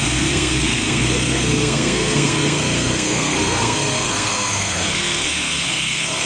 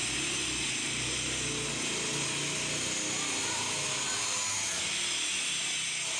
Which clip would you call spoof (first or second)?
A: first